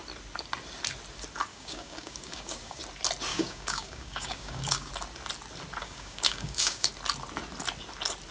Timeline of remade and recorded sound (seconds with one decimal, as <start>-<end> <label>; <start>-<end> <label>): 0.0-1.5 recorded; 1.5-2.8 remade; 2.8-3.3 recorded; 3.3-4.9 remade; 4.9-5.8 recorded; 5.8-6.9 remade; 6.9-8.3 recorded